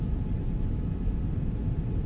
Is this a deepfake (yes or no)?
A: no